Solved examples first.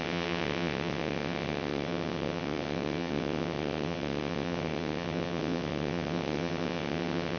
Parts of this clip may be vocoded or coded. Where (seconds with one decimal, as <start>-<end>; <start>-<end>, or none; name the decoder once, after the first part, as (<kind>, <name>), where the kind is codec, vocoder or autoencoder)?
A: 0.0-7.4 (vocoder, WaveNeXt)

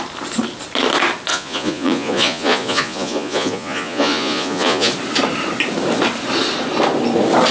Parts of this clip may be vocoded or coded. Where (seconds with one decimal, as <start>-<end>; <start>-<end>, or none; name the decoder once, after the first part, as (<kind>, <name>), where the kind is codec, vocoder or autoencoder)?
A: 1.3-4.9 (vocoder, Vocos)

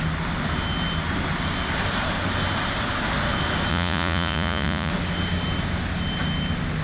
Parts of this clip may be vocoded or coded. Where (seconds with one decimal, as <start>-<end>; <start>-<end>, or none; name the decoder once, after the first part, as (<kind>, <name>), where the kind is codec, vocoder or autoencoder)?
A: 3.7-4.9 (vocoder, Vocos)